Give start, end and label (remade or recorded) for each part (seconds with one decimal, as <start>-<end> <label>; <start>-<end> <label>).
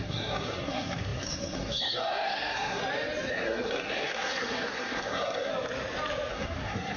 0.0-2.8 remade; 2.8-3.3 recorded; 3.3-5.5 remade; 5.5-6.3 recorded; 6.3-7.0 remade